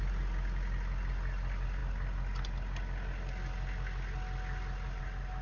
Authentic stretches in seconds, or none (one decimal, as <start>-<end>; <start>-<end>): 0.0-5.4